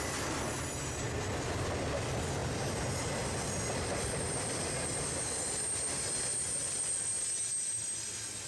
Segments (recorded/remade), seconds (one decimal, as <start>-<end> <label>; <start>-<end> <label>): 0.0-8.5 recorded